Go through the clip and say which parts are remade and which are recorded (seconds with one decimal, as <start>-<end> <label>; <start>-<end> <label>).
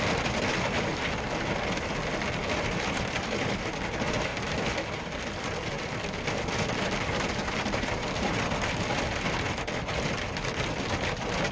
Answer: 0.0-0.9 remade; 0.9-1.8 recorded; 1.8-4.3 remade; 4.3-4.9 recorded; 4.9-11.5 remade